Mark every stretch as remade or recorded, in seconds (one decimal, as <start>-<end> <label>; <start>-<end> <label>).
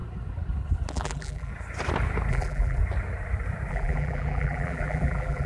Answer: 0.0-0.9 recorded; 0.9-1.5 remade; 1.5-2.3 recorded; 2.3-2.8 remade; 2.8-3.7 recorded; 3.7-5.5 remade